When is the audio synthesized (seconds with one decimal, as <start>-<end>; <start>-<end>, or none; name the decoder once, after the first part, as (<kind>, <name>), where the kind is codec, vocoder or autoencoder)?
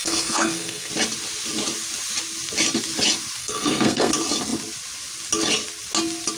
0.0-0.9 (codec, SNAC); 3.4-4.1